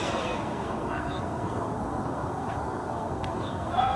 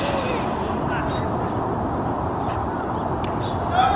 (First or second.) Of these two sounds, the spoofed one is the first